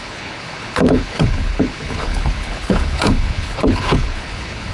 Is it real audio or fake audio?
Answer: fake